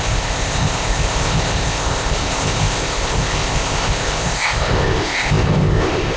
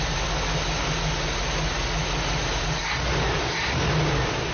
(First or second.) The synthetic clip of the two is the first